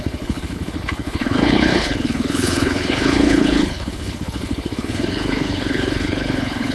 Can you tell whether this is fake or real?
fake